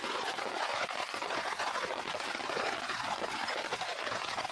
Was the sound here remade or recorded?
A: remade